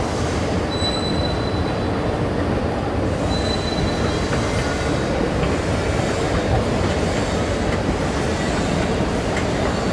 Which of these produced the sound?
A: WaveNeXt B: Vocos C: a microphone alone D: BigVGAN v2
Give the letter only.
C